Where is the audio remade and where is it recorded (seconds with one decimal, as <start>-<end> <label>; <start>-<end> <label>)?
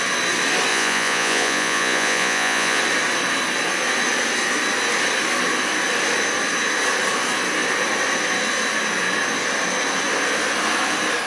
0.0-0.7 recorded; 0.7-2.8 remade; 2.8-11.3 recorded